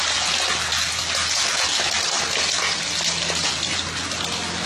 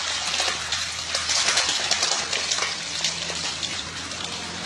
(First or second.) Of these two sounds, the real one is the first